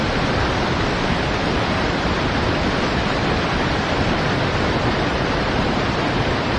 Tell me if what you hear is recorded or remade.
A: remade